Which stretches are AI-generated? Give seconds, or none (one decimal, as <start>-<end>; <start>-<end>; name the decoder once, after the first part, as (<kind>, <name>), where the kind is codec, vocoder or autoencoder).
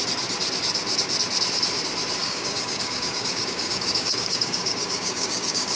2.2-5.8 (codec, DAC)